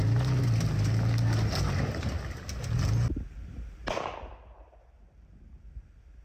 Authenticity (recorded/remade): recorded